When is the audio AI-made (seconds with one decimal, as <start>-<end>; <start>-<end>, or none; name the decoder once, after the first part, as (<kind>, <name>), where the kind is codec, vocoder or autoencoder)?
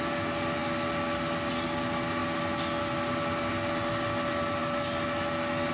none